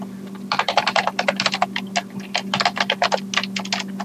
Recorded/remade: recorded